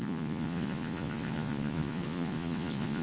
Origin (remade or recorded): remade